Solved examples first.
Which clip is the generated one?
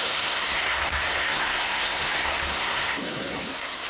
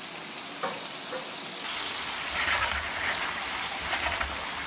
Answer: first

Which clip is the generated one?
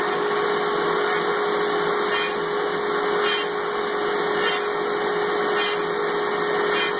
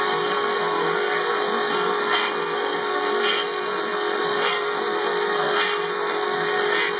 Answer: second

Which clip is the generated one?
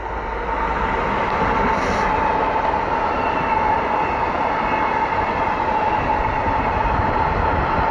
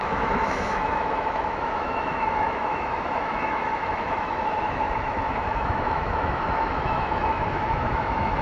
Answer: second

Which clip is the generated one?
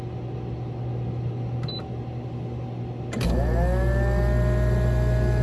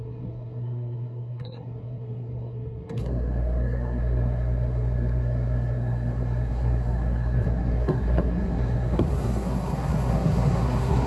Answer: second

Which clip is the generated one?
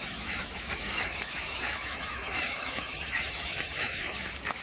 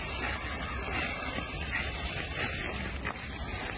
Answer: first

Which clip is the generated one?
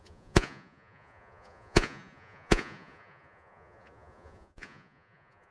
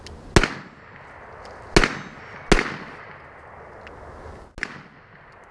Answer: first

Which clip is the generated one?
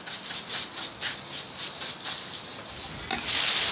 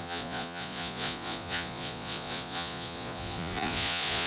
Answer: second